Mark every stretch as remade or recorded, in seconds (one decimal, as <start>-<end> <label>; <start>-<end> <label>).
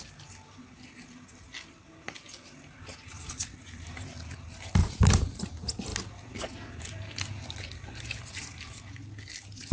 0.0-4.8 recorded; 4.8-5.5 remade; 5.5-9.7 recorded